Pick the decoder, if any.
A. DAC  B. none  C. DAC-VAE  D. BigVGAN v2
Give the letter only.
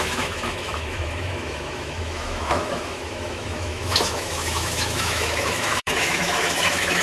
C